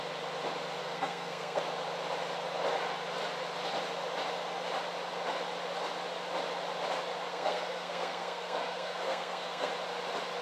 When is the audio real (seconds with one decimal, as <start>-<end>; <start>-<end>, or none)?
0.0-0.8; 1.6-7.3; 9.7-10.4